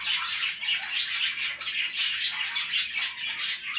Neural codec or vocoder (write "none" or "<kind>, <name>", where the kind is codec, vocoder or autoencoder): none